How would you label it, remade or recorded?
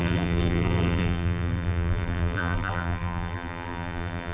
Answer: remade